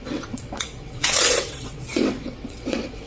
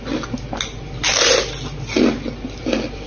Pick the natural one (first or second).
second